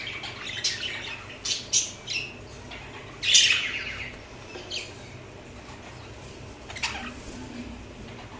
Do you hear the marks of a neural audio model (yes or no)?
no